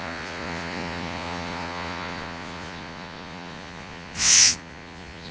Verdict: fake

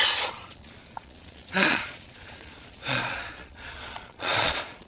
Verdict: fake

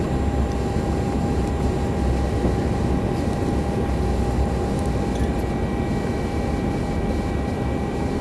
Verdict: real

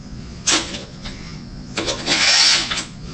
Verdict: fake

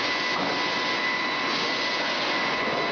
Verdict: fake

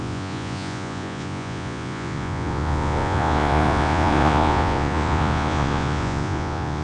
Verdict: fake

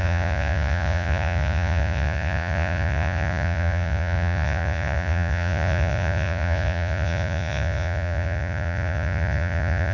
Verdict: fake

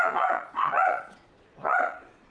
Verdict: fake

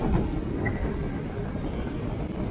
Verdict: real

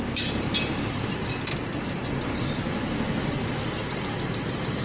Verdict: real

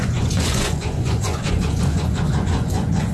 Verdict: fake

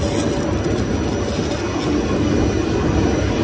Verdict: real